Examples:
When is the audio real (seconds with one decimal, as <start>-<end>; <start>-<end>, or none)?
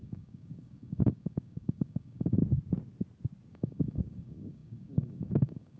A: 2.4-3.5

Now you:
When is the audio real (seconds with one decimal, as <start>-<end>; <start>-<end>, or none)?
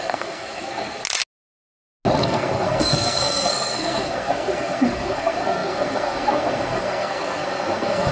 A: 1.0-2.2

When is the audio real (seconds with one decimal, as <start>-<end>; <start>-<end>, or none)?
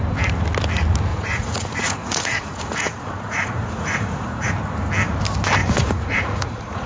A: 0.0-1.1; 4.5-5.6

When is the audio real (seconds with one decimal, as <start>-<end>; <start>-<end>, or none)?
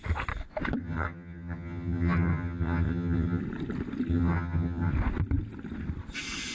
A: 0.0-0.8; 3.4-4.1; 4.9-6.5